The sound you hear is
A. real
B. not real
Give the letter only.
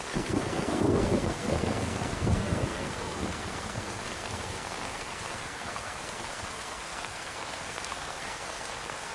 B